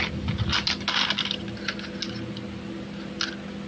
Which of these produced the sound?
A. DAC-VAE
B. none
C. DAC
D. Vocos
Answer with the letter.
B